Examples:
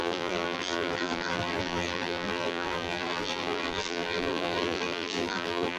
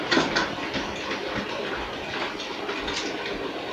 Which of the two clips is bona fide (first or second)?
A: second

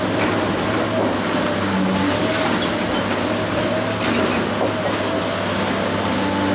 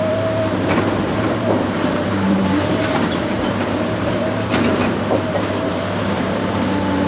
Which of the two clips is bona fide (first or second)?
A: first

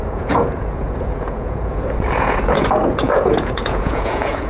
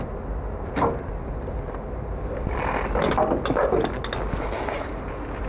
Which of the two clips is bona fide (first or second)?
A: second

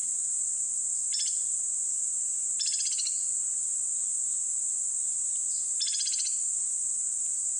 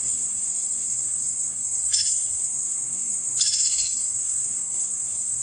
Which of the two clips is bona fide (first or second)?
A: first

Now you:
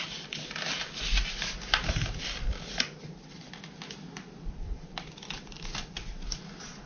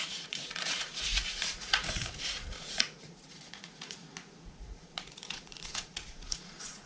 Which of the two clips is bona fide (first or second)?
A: first